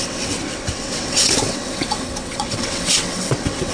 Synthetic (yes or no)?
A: yes